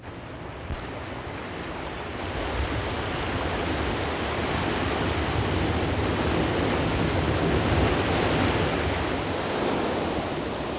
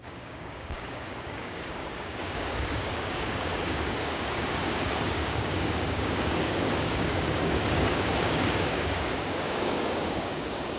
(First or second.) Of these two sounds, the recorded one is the first